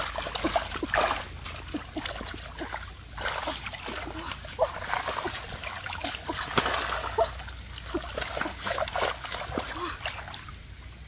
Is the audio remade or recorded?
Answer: recorded